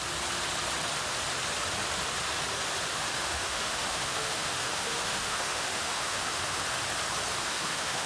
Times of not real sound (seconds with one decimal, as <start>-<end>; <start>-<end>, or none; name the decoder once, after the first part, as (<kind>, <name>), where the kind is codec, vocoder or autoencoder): 2.9-6.6 (autoencoder, DAC-VAE); 7.4-8.1